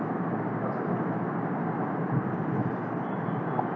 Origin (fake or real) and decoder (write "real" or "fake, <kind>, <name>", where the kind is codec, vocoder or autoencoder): real